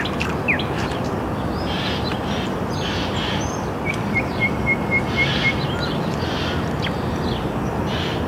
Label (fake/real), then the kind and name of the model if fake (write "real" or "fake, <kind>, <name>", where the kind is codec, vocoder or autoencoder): real